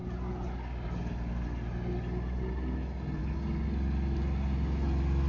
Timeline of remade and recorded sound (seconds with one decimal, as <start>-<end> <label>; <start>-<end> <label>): 0.0-5.3 recorded